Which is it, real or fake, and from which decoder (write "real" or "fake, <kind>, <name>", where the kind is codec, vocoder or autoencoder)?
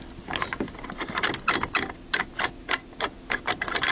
real